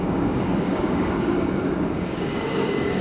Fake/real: fake